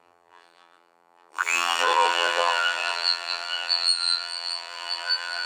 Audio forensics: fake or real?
fake